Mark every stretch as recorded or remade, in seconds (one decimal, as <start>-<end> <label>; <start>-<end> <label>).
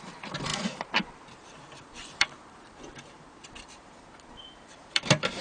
0.0-5.4 remade